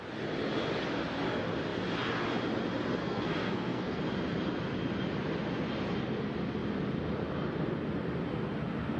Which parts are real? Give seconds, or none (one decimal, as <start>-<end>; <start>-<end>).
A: 0.0-3.0; 4.0-9.0